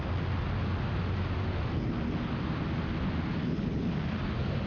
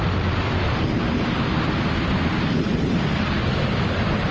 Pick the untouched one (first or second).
first